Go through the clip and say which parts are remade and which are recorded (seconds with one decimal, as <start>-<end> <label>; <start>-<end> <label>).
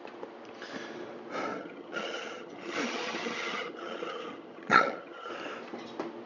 0.0-1.5 recorded; 1.5-5.3 remade; 5.3-6.3 recorded